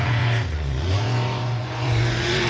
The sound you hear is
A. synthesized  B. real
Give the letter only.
A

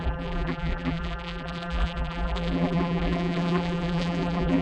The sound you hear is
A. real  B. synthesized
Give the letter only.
B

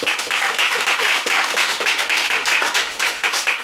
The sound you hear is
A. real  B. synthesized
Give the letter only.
B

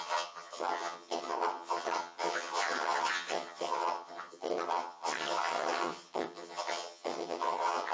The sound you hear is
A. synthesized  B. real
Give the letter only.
A